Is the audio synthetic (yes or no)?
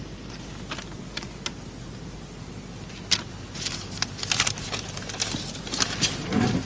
no